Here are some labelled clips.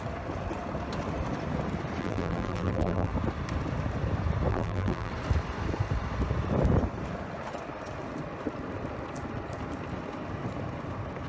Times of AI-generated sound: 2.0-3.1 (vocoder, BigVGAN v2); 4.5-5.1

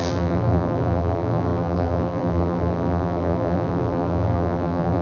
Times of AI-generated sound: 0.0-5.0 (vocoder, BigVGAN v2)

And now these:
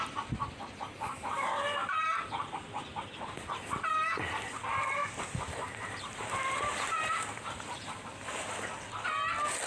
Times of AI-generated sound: 1.8-3.2 (vocoder, BigVGAN v2); 5.0-8.0

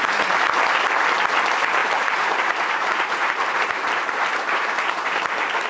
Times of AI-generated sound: 1.8-5.2 (vocoder, BigVGAN v2)

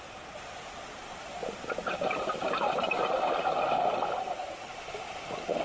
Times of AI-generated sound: 1.4-3.0 (vocoder, BigVGAN v2); 4.4-5.6

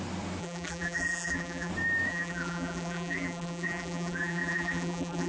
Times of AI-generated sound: 0.4-1.7 (vocoder, BigVGAN v2); 2.1-5.3

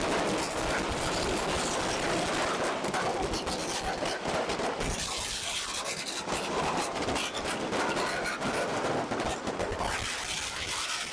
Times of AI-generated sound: none